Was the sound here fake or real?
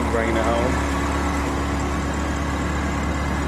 real